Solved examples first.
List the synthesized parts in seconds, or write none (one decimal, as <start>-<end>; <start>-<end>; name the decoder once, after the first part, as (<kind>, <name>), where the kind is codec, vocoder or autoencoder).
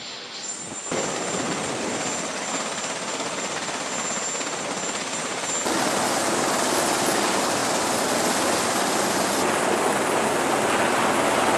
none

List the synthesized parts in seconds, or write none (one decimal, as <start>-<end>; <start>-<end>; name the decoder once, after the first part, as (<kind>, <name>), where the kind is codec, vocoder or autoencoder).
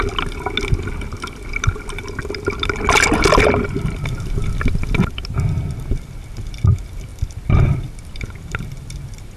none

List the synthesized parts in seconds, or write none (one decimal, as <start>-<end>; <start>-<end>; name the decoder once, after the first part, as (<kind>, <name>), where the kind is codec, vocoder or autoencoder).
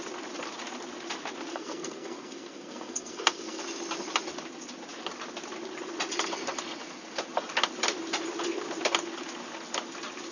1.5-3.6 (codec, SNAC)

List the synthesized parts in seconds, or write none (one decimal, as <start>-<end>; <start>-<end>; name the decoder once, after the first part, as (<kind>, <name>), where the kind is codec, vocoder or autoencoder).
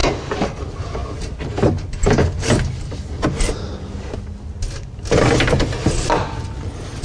none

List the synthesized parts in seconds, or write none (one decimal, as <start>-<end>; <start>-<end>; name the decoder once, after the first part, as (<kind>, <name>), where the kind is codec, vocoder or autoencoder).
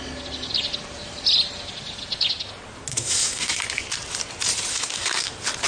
2.9-3.6 (codec, SNAC); 4.7-5.3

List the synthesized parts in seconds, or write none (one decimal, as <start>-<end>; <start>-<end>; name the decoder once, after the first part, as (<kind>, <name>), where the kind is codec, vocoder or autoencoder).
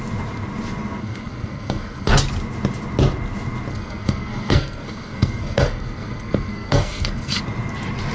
1.0-2.1 (codec, SNAC); 3.7-7.4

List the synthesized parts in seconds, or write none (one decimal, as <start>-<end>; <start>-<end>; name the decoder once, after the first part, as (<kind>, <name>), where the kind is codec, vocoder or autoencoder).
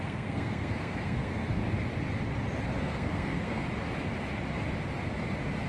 0.0-1.6 (codec, SNAC); 2.8-3.6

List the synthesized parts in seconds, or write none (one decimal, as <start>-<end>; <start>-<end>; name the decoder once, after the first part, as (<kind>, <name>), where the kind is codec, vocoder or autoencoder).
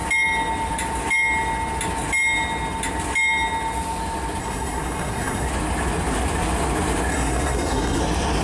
4.4-5.5 (codec, SNAC); 7.1-8.0